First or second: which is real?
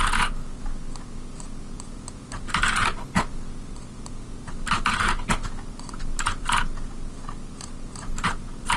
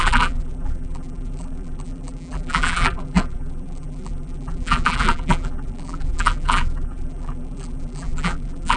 first